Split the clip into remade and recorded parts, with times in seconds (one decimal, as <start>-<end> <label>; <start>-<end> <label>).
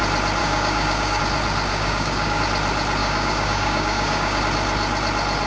0.0-0.4 recorded; 0.4-1.2 remade; 1.2-1.7 recorded; 1.7-2.4 remade; 2.4-3.0 recorded; 3.0-4.4 remade; 4.4-5.5 recorded